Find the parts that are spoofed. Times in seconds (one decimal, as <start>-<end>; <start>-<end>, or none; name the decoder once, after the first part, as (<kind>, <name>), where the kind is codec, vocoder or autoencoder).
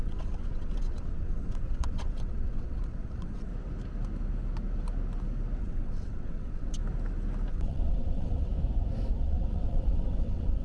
0.0-3.5 (vocoder, WaveNeXt); 5.6-6.8; 7.5-8.5; 9.1-10.6